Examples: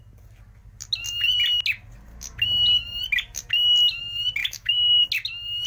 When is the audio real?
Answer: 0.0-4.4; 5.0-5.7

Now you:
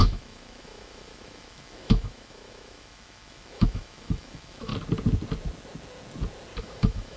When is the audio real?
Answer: 4.7-6.6

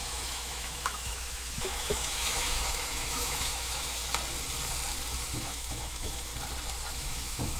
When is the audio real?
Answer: 4.0-5.3; 6.3-6.9

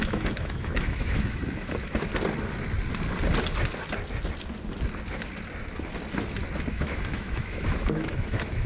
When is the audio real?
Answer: 2.1-6.7

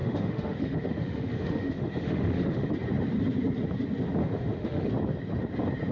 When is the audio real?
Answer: 2.7-4.2; 4.9-5.9